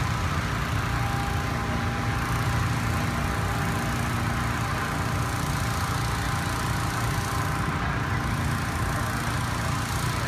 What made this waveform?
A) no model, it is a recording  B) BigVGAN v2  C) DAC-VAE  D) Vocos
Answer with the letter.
A